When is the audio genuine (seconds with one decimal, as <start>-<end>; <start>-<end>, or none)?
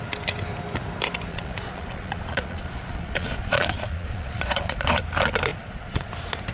0.0-1.3; 5.0-5.5; 6.1-6.5